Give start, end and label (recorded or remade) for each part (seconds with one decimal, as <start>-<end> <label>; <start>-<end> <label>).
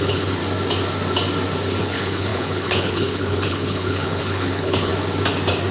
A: 0.0-0.4 remade; 0.4-1.8 recorded; 1.8-4.9 remade; 4.9-5.7 recorded